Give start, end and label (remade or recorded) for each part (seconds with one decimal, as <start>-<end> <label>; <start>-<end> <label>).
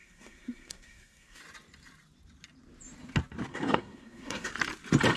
0.0-1.4 remade; 1.4-3.5 recorded; 3.5-4.5 remade; 4.5-5.2 recorded